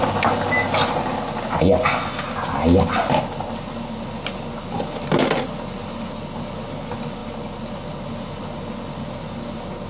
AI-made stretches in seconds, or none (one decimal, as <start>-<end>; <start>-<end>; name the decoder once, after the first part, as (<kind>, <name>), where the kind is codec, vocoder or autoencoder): none